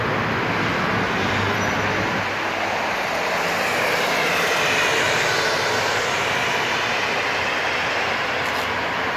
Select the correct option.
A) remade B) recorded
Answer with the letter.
B